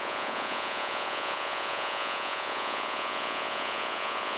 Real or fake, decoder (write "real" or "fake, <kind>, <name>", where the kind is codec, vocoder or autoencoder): fake, vocoder, Vocos